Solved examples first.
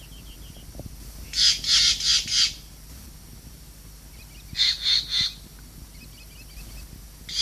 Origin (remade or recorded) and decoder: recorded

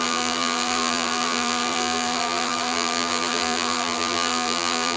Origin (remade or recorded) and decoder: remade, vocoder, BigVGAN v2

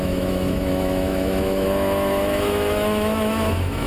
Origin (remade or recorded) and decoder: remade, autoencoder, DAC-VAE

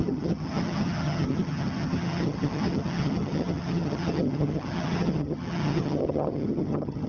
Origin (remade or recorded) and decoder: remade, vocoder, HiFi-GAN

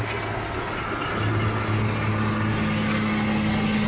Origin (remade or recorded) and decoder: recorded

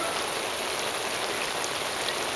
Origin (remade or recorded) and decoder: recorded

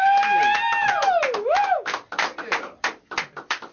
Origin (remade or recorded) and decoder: recorded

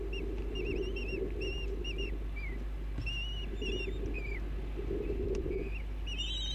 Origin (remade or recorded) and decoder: recorded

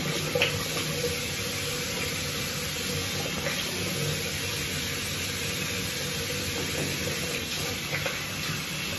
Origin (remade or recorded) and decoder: recorded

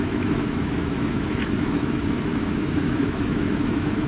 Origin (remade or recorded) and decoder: remade, autoencoder, DAC-VAE